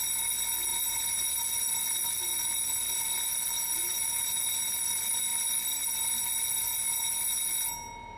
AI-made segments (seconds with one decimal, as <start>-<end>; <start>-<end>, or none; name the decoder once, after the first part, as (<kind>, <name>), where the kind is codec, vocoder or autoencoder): 3.9-4.4 (vocoder, BigVGAN v2)